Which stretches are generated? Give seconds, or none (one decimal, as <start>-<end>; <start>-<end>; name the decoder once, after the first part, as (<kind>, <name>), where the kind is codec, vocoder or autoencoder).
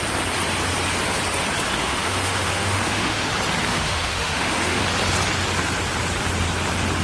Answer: 1.8-3.3 (autoencoder, DAC-VAE); 3.7-4.8